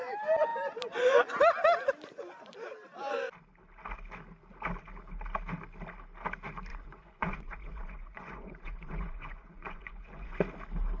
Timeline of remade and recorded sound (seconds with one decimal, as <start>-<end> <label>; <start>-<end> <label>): 0.0-6.7 recorded; 6.7-10.4 remade; 10.4-11.0 recorded